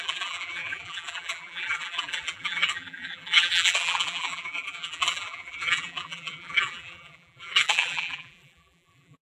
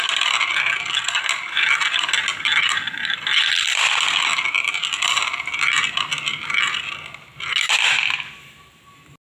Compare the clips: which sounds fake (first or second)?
first